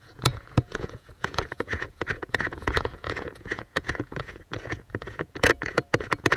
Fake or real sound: fake